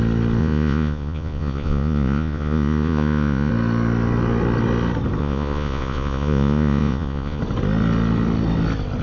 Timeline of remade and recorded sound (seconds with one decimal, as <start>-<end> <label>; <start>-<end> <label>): 0.0-0.4 recorded; 0.4-3.5 remade; 3.5-5.2 recorded; 5.2-7.4 remade; 7.4-9.0 recorded